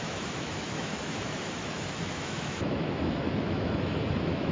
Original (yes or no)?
no